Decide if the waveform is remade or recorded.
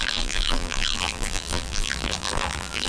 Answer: remade